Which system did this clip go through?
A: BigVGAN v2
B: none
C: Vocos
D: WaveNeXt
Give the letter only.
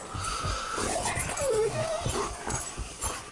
C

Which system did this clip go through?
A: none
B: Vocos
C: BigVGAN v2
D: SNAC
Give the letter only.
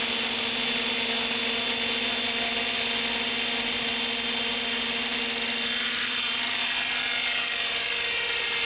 A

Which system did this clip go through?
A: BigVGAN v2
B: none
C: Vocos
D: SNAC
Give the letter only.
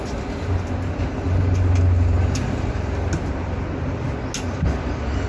B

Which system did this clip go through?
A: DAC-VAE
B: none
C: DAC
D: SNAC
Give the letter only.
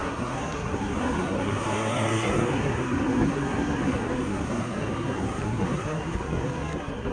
D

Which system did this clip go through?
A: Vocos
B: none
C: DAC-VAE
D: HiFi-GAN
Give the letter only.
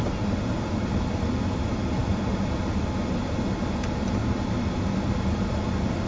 B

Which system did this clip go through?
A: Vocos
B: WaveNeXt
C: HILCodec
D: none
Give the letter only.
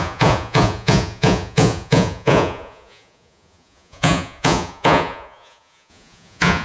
A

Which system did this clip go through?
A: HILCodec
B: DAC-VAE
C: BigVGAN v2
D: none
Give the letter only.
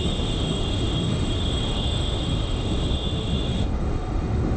B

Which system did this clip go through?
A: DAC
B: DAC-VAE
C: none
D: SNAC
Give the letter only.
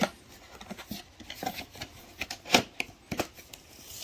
C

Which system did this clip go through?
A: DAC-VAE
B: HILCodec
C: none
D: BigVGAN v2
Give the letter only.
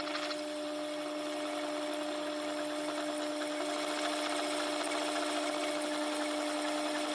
C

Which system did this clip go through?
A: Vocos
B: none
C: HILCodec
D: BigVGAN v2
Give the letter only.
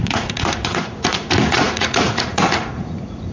A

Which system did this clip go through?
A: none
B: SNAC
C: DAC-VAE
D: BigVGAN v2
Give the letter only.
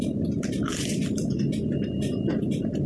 D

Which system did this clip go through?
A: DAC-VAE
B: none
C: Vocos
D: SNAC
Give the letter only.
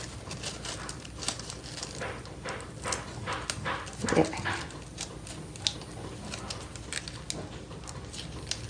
B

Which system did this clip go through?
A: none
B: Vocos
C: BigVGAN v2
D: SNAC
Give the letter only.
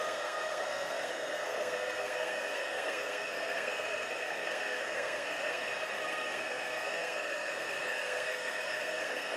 D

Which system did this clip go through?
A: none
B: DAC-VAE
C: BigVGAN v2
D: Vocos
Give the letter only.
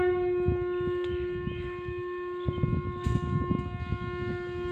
A